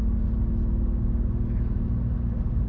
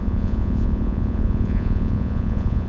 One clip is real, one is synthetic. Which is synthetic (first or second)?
second